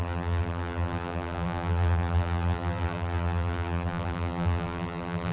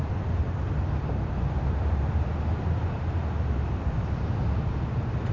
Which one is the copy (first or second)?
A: first